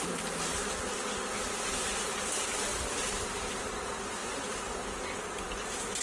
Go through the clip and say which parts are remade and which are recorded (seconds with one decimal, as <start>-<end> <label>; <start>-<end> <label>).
0.0-6.0 recorded